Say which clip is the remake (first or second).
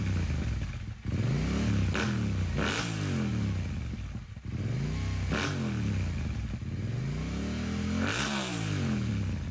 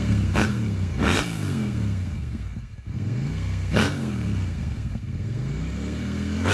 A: second